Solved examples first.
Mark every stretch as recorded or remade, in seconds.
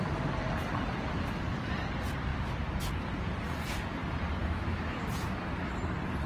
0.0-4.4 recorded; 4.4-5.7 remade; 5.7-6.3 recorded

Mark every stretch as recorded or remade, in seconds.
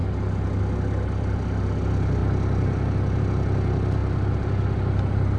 0.0-5.4 recorded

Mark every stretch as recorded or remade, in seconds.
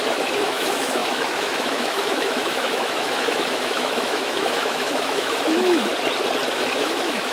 0.0-5.9 remade; 5.9-6.5 recorded; 6.5-7.3 remade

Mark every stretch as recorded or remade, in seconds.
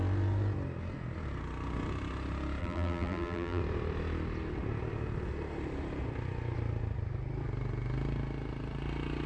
0.0-2.6 recorded; 2.6-3.6 remade; 3.6-9.3 recorded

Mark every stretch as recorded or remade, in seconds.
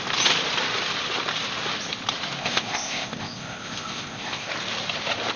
0.0-2.4 recorded; 2.4-4.5 remade; 4.5-5.4 recorded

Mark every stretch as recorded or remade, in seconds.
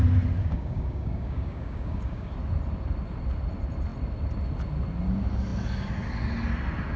0.0-0.4 recorded; 0.4-2.3 remade; 2.3-7.0 recorded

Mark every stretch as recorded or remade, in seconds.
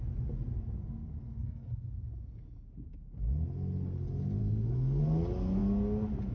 0.0-1.4 recorded; 1.4-1.9 remade; 1.9-4.4 recorded; 4.4-5.0 remade; 5.0-6.3 recorded